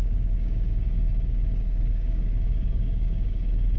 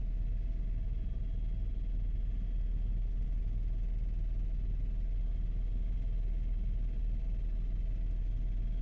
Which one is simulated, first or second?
first